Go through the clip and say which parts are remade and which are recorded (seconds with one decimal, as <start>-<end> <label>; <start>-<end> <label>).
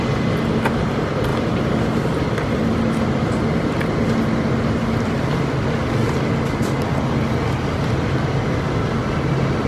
0.0-9.7 recorded